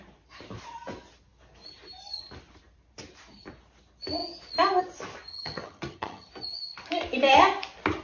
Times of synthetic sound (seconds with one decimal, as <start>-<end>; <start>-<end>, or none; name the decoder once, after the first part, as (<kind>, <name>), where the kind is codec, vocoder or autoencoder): 5.3-6.3 (vocoder, HiFi-GAN)